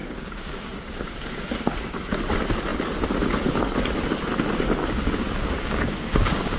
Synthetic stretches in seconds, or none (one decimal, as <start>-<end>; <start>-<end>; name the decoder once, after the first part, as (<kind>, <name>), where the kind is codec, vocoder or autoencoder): 0.0-2.2 (codec, DAC); 4.8-6.6